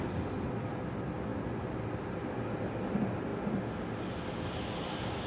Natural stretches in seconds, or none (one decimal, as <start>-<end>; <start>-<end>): 0.0-5.3